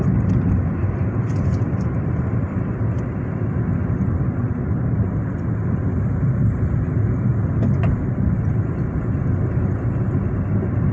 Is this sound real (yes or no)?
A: yes